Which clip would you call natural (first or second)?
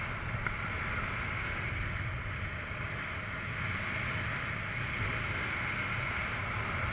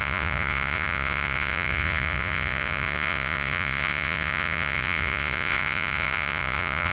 first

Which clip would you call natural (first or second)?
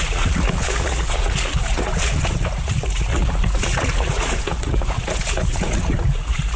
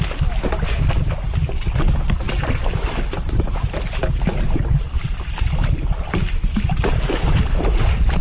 second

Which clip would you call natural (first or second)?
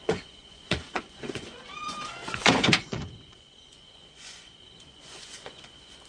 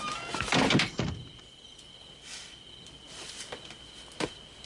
second